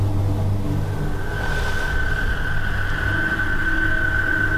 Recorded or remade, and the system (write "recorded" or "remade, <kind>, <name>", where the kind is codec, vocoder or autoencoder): recorded